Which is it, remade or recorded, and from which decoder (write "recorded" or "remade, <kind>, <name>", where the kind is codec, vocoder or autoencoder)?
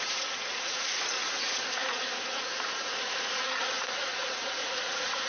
remade, vocoder, Vocos